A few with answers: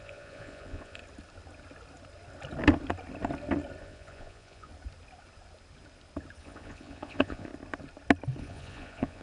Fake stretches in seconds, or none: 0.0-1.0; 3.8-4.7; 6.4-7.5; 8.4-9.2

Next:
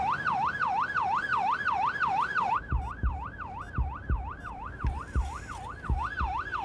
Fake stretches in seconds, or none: 1.3-2.5; 4.0-5.4

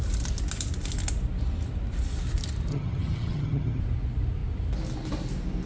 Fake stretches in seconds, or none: 2.7-3.8

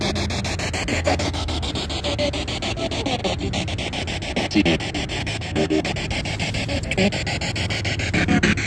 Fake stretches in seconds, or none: 0.9-1.7; 5.2-5.9

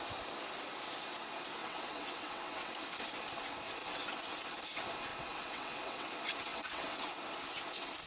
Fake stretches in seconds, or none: 1.6-2.7; 3.8-4.4; 5.1-6.1; 6.5-7.1

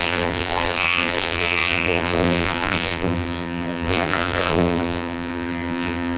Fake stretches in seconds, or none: 0.0-6.2